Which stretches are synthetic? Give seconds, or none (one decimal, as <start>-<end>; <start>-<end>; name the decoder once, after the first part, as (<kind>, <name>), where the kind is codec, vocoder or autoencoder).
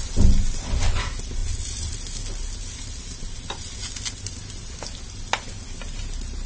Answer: none